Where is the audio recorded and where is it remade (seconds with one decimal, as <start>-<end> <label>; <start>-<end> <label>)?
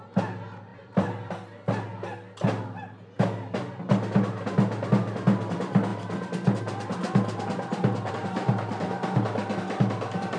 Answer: 0.0-0.7 recorded; 0.7-1.3 remade; 1.3-10.4 recorded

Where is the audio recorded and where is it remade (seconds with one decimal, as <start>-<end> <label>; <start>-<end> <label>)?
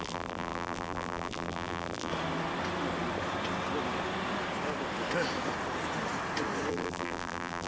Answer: 0.0-2.1 remade; 2.1-6.7 recorded; 6.7-7.7 remade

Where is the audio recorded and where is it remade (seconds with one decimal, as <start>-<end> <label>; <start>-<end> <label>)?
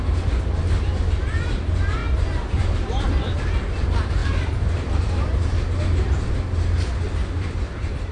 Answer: 0.0-2.0 recorded; 2.0-3.1 remade; 3.1-4.2 recorded; 4.2-5.7 remade; 5.7-7.2 recorded; 7.2-8.1 remade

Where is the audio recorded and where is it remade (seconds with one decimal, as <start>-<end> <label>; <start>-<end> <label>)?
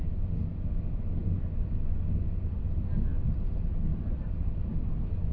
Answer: 0.0-5.3 recorded